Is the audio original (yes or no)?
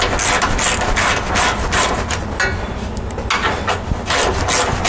yes